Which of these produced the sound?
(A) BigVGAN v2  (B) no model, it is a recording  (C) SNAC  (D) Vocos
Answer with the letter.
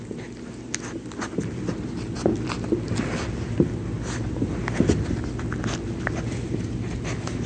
B